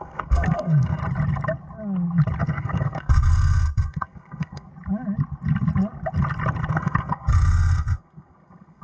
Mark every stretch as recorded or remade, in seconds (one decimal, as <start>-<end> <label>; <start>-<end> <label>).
0.0-1.0 remade; 1.0-2.4 recorded; 2.4-4.7 remade; 4.7-6.7 recorded; 6.7-8.8 remade